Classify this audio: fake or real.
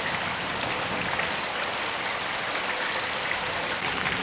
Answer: real